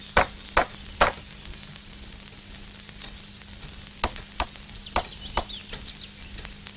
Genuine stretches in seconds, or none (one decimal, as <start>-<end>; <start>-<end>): 0.0-6.8